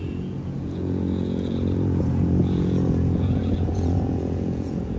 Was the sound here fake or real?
fake